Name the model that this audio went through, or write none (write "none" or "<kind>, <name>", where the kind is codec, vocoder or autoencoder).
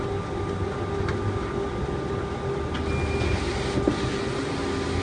none